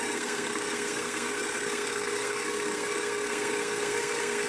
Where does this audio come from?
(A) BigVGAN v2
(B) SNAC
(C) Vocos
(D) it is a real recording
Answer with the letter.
B